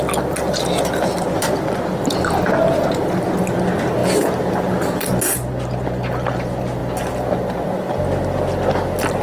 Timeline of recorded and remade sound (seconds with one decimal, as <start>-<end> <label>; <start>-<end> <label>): 0.0-9.2 recorded